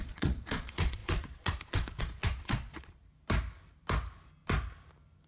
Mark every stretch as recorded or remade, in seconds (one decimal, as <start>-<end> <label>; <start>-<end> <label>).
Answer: 0.0-3.0 remade; 3.0-5.3 recorded